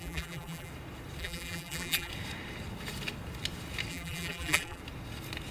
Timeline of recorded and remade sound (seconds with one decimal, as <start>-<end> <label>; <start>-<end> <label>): 0.0-0.7 remade; 0.7-1.2 recorded; 1.2-2.1 remade; 2.1-3.9 recorded; 3.9-4.8 remade; 4.8-5.5 recorded